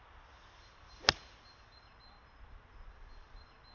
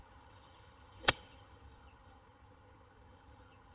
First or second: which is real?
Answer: first